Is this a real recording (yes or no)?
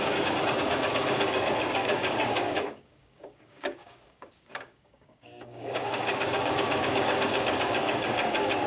no